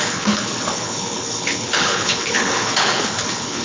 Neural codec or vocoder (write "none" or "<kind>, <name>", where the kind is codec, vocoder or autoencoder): codec, HILCodec